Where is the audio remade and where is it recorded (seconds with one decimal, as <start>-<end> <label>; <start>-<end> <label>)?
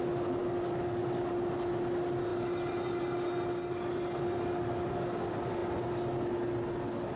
0.0-7.2 recorded